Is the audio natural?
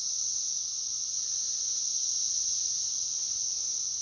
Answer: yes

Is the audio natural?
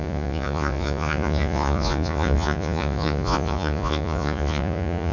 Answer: no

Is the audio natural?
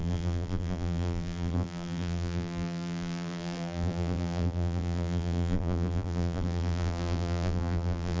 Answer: no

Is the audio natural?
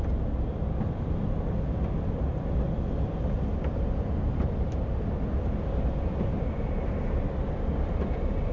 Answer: yes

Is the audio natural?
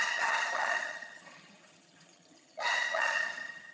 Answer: no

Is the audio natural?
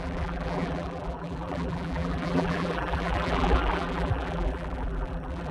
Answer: no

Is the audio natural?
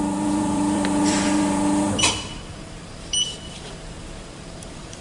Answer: no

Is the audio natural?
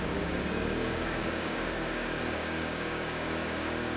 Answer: no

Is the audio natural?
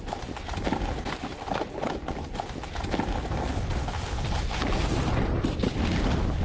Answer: yes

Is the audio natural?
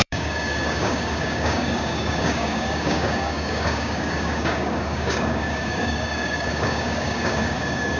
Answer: no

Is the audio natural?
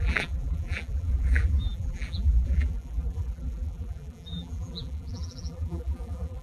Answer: no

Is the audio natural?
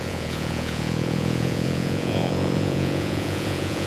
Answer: no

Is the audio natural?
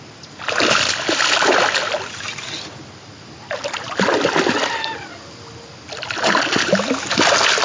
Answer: yes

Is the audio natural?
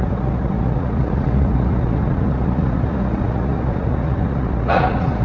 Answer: no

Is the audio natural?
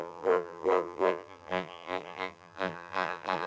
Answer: no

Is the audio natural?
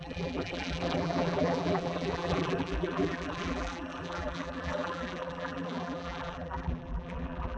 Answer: no